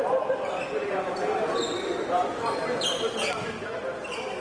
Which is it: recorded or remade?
recorded